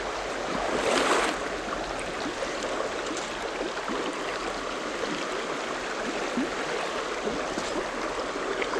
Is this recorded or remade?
recorded